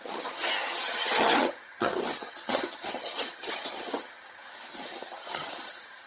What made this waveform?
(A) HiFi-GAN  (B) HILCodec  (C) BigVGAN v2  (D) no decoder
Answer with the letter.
A